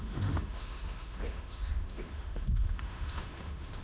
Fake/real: fake